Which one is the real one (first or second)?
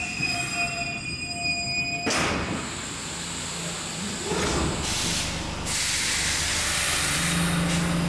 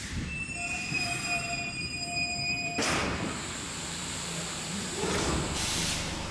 first